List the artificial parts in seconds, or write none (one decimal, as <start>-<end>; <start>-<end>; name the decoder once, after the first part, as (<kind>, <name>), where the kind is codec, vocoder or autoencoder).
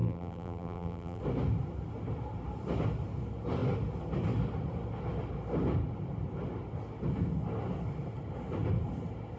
0.0-1.2 (vocoder, BigVGAN v2)